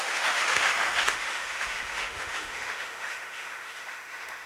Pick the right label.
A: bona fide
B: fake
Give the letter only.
B